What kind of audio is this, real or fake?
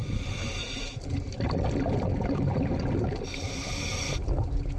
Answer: real